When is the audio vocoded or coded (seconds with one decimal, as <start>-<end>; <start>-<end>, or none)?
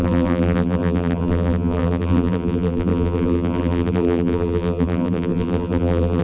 0.0-6.2